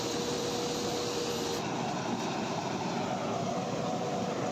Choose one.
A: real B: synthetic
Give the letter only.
A